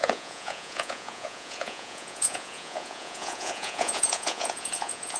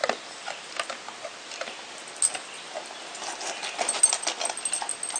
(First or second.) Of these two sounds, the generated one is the first